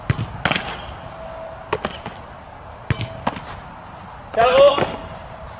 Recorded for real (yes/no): yes